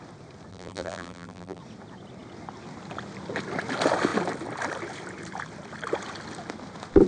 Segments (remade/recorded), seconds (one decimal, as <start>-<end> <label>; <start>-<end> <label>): 0.0-0.5 recorded; 0.5-1.6 remade; 1.6-7.1 recorded